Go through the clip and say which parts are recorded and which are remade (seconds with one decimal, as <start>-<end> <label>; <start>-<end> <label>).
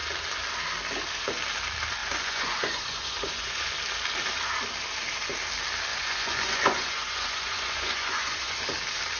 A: 0.0-2.0 recorded; 2.0-3.7 remade; 3.7-5.9 recorded; 5.9-8.6 remade; 8.6-9.2 recorded